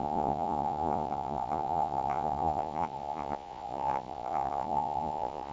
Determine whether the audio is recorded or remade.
remade